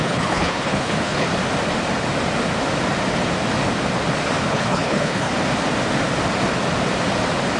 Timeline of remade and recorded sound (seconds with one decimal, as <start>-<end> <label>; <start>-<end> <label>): 0.0-1.3 remade; 1.3-4.5 recorded; 4.5-5.3 remade; 5.3-7.6 recorded